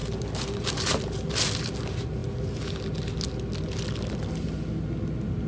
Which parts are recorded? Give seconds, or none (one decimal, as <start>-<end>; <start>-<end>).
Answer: 0.0-5.5